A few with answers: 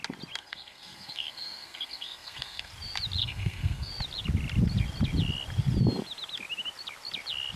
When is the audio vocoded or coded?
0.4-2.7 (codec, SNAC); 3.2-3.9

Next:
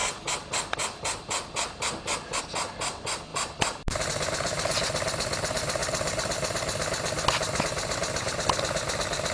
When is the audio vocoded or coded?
none